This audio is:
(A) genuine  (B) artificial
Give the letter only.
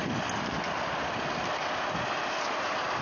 A